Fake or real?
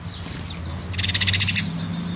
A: real